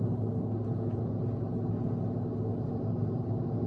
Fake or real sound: real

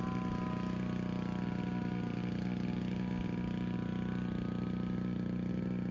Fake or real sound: real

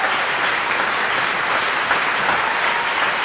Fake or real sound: real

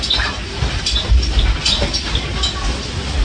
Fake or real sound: real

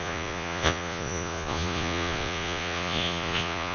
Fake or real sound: fake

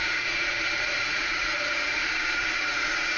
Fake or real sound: fake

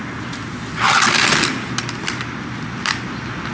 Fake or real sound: real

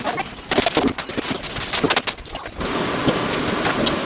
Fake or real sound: real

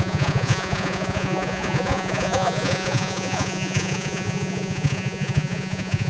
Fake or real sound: fake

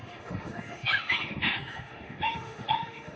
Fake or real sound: fake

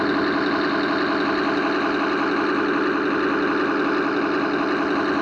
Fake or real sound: real